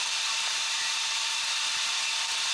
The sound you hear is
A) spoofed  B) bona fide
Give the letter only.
B